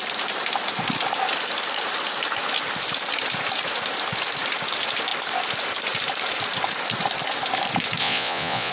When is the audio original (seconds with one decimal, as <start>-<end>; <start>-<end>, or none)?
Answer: 0.0-8.0